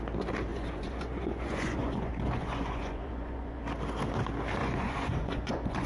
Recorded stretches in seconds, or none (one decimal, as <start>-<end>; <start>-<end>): 0.0-0.5; 3.6-4.6

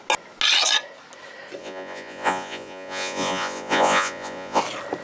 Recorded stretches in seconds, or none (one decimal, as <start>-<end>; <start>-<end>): 0.0-1.6; 4.6-5.0